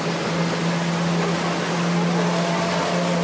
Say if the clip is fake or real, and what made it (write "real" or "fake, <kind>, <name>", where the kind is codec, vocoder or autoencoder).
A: real